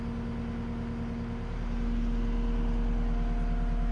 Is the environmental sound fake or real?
real